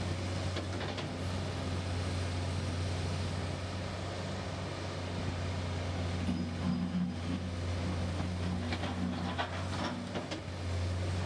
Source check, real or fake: real